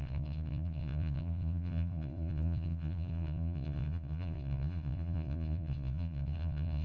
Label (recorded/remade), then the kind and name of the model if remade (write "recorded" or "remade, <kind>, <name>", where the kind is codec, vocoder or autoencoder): remade, vocoder, Vocos